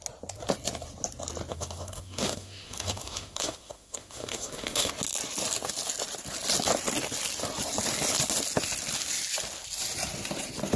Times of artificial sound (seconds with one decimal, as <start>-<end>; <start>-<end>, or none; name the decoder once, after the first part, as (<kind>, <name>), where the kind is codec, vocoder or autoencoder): 1.5-4.9 (autoencoder, DAC-VAE)